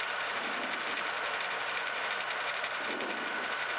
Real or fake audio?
fake